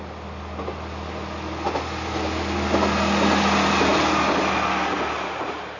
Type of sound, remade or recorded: recorded